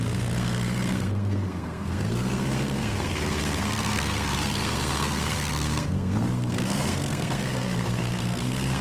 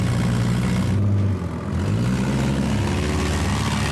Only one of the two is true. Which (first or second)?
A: second